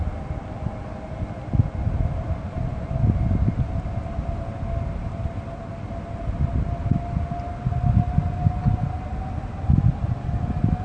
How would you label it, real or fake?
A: real